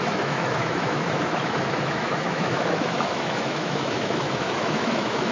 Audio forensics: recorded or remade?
remade